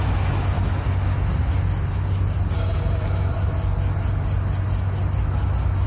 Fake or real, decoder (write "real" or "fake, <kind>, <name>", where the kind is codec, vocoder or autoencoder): real